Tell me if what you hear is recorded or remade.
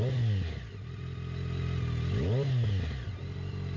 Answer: recorded